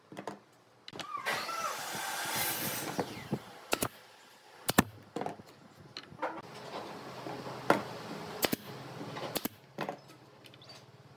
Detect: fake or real real